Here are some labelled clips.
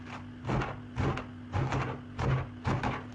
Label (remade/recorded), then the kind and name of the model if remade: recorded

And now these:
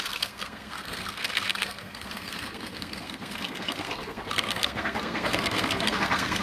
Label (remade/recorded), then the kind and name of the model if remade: remade, codec, SNAC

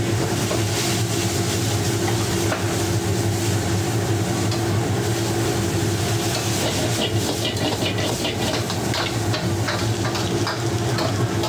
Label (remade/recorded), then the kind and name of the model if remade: recorded